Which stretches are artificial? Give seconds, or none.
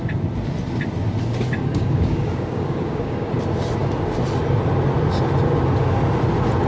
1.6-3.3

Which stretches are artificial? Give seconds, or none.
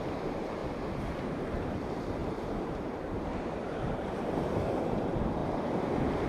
0.0-0.6; 1.2-5.4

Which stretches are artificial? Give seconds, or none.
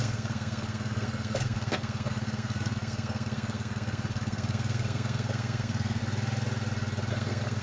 0.0-6.0; 7.1-7.6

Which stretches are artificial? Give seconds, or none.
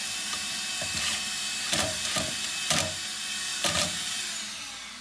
0.0-3.0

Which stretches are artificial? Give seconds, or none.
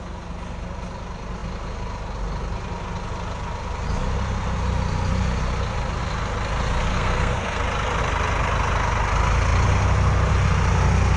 6.9-7.6